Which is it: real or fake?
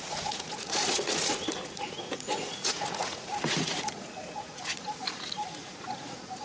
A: fake